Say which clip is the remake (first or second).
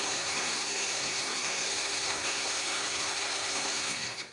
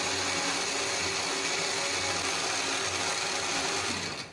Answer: first